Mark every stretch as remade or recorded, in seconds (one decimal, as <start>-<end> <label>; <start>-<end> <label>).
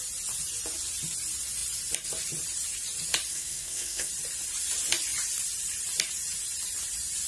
0.0-3.3 recorded; 3.3-4.1 remade; 4.1-7.3 recorded